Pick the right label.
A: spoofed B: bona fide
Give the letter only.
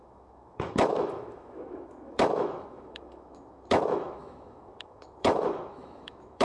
A